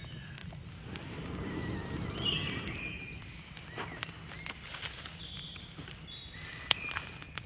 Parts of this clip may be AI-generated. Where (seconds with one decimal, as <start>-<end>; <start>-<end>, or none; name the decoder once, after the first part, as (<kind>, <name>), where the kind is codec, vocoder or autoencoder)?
none